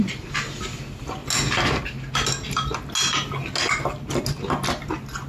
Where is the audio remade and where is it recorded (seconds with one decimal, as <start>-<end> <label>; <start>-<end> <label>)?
0.0-1.2 remade; 1.2-4.4 recorded; 4.4-5.3 remade